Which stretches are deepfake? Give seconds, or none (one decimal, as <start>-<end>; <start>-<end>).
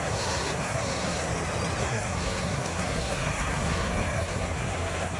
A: 0.0-1.3; 1.8-5.2